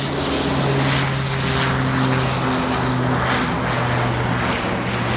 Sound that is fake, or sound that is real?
real